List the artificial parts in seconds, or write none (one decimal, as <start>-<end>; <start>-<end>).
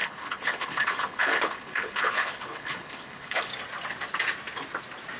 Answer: 0.0-3.5